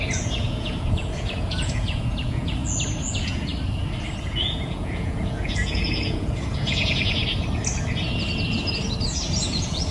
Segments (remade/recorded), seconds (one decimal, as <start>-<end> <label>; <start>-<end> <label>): 0.0-2.6 remade; 2.6-3.1 recorded; 3.1-3.5 remade; 3.5-4.2 recorded; 4.2-7.2 remade; 7.2-9.5 recorded; 9.5-9.9 remade